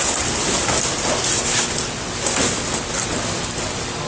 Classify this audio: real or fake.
real